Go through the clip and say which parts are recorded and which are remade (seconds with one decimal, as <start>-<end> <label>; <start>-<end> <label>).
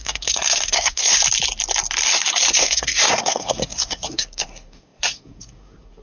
0.0-1.2 remade; 1.2-2.5 recorded; 2.5-6.0 remade